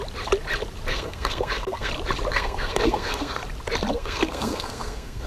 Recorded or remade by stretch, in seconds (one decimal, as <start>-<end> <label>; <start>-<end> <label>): 0.0-0.9 recorded; 0.9-1.9 remade; 1.9-2.3 recorded; 2.3-3.4 remade; 3.4-3.9 recorded; 3.9-5.3 remade